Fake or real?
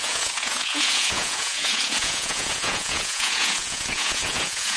fake